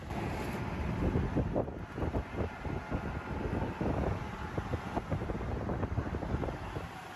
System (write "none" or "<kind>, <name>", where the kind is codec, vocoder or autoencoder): none